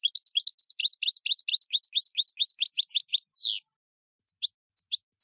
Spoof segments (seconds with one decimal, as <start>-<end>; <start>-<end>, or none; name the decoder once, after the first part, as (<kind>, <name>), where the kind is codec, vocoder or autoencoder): none